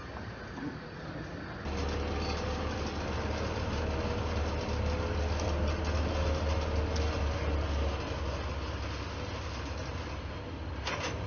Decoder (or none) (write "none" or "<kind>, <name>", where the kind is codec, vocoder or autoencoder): none